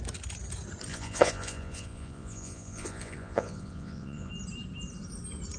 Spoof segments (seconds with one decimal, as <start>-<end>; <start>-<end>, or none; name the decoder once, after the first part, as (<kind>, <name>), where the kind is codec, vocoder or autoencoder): 0.9-4.3 (vocoder, Vocos)